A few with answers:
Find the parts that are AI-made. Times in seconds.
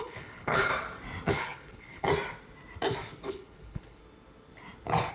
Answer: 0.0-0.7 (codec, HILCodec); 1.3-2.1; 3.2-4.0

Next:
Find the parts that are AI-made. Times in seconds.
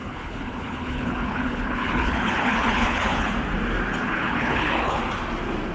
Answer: 0.0-3.3 (codec, HILCodec); 4.0-5.0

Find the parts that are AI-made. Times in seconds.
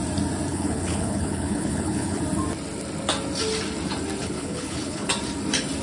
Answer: 0.5-2.2 (codec, HILCodec); 4.2-5.1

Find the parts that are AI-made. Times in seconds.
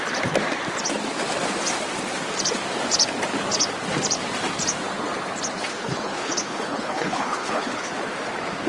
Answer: 5.7-7.9 (codec, HILCodec)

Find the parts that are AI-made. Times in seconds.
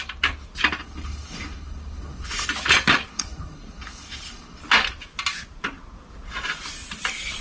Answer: 0.8-2.5 (codec, HILCodec); 3.1-4.6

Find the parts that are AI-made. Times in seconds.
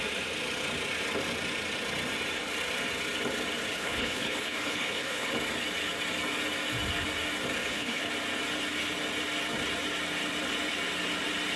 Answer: 3.7-5.3 (codec, HILCodec); 7.6-8.1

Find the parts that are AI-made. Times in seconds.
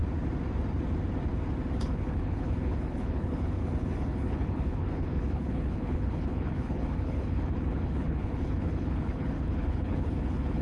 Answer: 1.8-10.6 (codec, HILCodec)